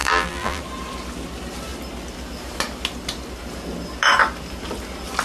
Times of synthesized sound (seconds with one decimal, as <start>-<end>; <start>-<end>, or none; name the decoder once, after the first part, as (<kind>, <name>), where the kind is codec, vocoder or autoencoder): 0.0-0.6 (vocoder, BigVGAN v2)